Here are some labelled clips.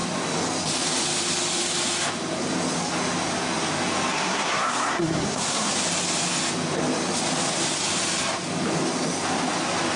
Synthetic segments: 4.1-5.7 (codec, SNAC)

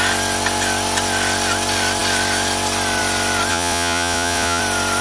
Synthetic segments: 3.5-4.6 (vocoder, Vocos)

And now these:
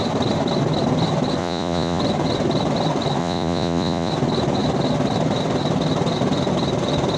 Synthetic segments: 1.4-2.0 (vocoder, Vocos); 3.2-4.1